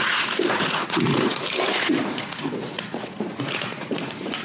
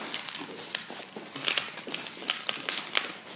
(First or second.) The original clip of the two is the second